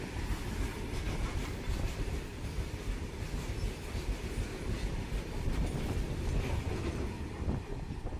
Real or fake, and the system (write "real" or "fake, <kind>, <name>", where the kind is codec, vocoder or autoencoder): fake, vocoder, BigVGAN v2